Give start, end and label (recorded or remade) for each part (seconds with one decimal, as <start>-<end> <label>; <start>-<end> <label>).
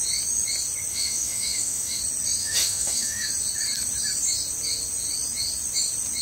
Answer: 0.0-0.9 recorded; 0.9-2.0 remade; 2.0-2.4 recorded; 2.4-3.3 remade; 3.3-6.2 recorded